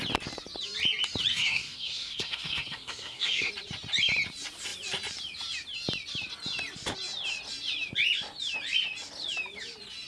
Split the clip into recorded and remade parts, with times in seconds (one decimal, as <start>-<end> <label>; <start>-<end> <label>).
0.0-1.3 recorded; 1.3-3.5 remade; 3.5-10.1 recorded